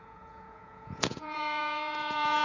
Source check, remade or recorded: remade